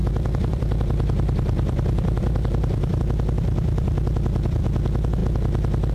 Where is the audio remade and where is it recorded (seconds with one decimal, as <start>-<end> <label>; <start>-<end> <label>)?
0.0-3.0 remade; 3.0-5.9 recorded